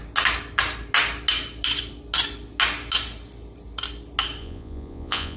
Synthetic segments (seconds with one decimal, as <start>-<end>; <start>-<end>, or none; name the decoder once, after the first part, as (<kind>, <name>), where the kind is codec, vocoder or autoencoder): 4.4-5.4 (vocoder, Vocos)